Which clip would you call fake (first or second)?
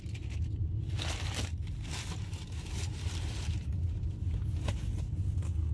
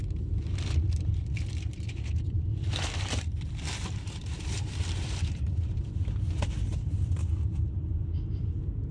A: second